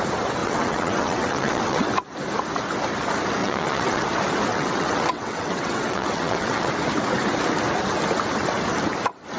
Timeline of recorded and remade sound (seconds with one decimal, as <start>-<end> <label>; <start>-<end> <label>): 0.0-0.4 recorded; 0.4-1.9 remade; 1.9-3.4 recorded; 3.4-4.0 remade; 4.0-4.5 recorded; 4.5-6.7 remade; 6.7-9.4 recorded